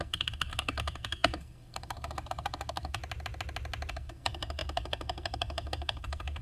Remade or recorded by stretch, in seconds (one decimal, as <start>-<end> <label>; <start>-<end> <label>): 0.0-3.0 remade; 3.0-3.9 recorded; 3.9-6.4 remade